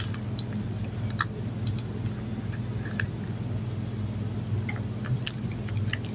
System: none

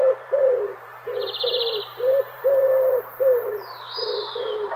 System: vocoder, BigVGAN v2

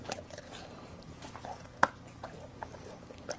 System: none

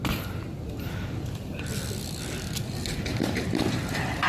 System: none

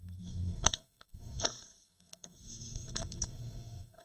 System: codec, SNAC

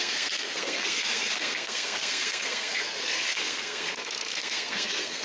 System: codec, SNAC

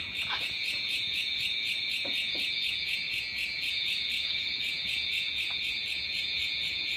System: vocoder, Vocos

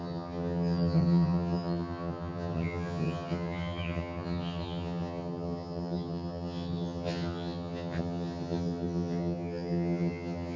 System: vocoder, HiFi-GAN